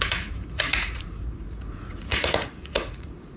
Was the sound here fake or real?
fake